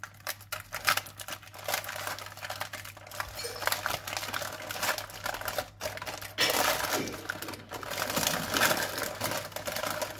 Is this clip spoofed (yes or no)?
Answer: no